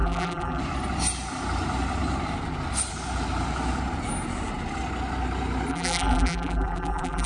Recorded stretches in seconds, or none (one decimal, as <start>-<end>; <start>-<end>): 0.6-5.7